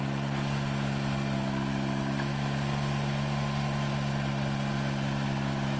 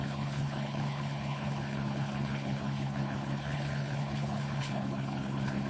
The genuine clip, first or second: first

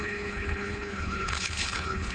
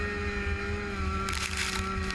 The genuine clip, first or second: second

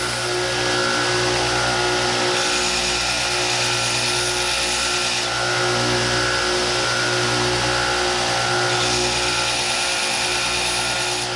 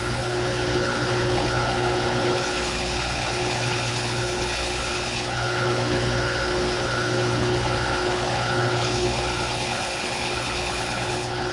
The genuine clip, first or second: first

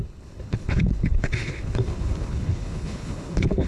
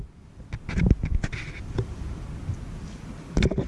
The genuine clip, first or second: second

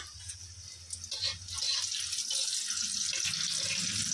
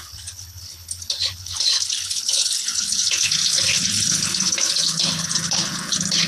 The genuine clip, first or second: first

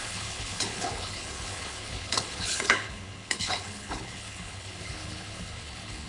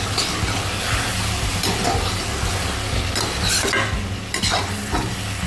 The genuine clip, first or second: second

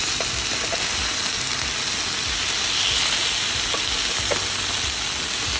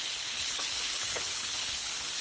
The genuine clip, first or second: first